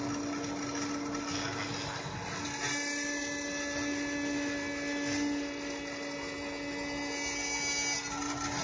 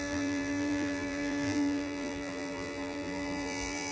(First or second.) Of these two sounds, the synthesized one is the second